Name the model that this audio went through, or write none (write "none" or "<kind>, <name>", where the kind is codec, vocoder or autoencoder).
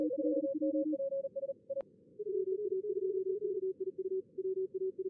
none